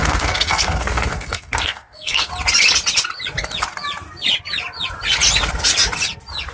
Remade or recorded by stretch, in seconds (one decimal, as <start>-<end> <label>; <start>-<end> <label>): 0.0-2.3 remade; 2.3-6.5 recorded